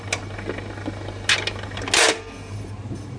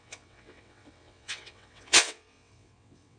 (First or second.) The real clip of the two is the first